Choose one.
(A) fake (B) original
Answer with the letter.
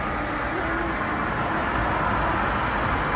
B